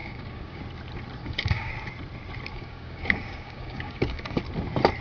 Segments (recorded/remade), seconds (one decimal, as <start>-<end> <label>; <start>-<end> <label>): 0.0-0.6 remade; 0.6-1.2 recorded; 1.2-1.7 remade; 1.7-2.5 recorded; 2.5-4.4 remade; 4.4-5.0 recorded